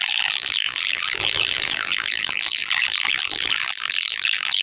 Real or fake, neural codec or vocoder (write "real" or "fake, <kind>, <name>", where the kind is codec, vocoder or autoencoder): fake, vocoder, BigVGAN v2